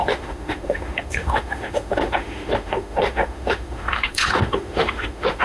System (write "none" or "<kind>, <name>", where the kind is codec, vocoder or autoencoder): autoencoder, DAC-VAE